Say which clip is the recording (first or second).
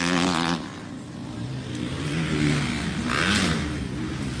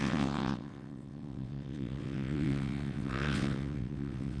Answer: first